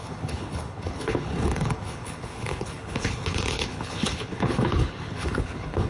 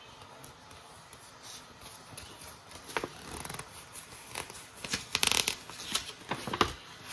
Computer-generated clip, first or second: first